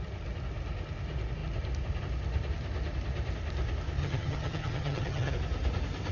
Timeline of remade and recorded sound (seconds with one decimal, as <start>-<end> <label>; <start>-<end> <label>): 0.0-4.0 recorded; 4.0-5.3 remade; 5.3-6.1 recorded